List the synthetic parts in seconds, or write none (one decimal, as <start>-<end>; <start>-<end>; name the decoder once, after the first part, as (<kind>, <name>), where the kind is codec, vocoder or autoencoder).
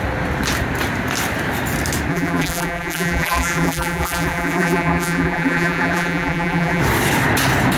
2.1-6.8 (vocoder, BigVGAN v2)